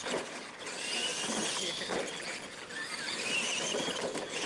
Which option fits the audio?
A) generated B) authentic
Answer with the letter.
B